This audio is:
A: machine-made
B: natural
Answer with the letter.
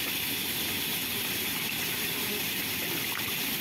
B